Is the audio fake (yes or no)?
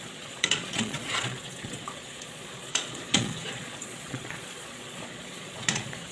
yes